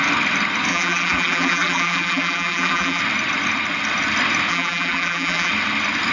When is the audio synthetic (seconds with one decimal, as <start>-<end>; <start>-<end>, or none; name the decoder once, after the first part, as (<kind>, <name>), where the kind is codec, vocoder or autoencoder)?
0.7-3.0 (vocoder, BigVGAN v2); 4.5-5.5